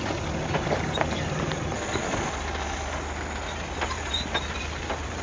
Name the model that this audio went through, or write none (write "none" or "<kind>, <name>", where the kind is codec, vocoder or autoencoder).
none